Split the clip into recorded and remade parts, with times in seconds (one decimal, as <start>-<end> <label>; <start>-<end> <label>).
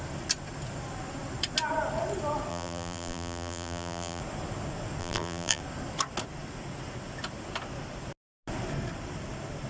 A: 0.0-2.5 recorded; 2.5-4.2 remade; 4.2-5.0 recorded; 5.0-5.6 remade; 5.6-9.7 recorded